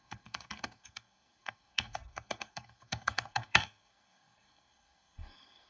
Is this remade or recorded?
remade